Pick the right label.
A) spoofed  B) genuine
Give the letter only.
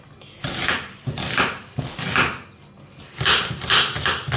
B